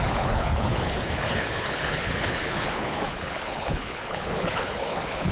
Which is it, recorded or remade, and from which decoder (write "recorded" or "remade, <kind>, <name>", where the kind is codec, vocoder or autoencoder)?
remade, codec, HILCodec